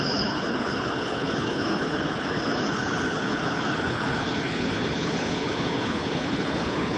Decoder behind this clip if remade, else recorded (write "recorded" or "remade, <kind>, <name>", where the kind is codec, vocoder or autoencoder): remade, codec, HILCodec